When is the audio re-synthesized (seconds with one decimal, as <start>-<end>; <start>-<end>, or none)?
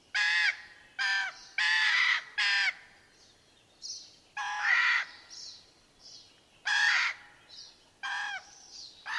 none